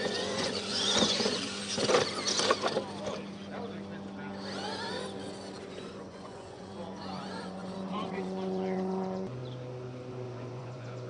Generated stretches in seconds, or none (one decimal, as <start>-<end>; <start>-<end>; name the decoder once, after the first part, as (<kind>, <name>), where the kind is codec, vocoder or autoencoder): 0.0-1.6 (vocoder, Vocos); 5.6-9.4; 10.1-11.1